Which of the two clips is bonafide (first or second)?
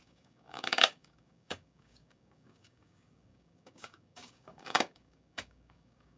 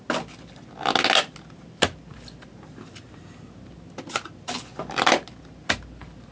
second